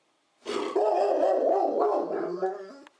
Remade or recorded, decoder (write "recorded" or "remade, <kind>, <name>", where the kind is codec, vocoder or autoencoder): recorded